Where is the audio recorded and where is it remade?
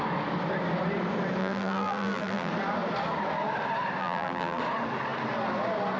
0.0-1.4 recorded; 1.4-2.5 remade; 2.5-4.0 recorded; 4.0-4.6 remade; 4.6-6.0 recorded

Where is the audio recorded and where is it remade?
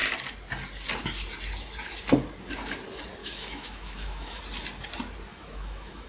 0.0-3.2 recorded; 3.2-4.4 remade; 4.4-5.3 recorded; 5.3-6.1 remade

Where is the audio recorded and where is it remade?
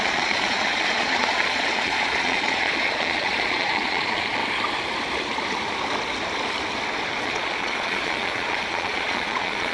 0.0-4.4 remade; 4.4-7.2 recorded; 7.2-9.7 remade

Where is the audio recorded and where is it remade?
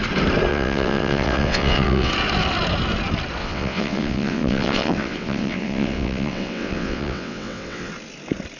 0.0-0.5 recorded; 0.5-2.1 remade; 2.1-3.4 recorded; 3.4-7.9 remade; 7.9-8.6 recorded